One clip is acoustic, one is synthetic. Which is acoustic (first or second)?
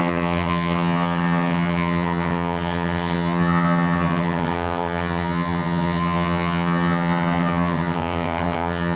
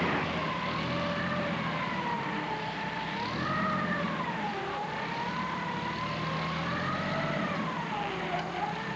second